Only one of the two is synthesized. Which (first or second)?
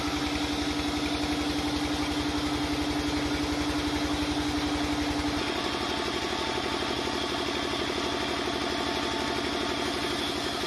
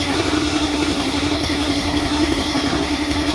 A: second